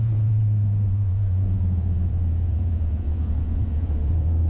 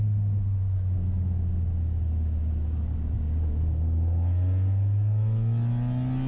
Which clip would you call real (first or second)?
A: second